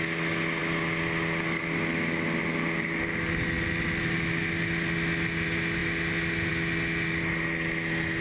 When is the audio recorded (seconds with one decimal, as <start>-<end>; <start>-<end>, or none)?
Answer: 0.0-8.2